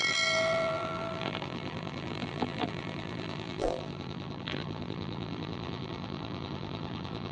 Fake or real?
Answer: fake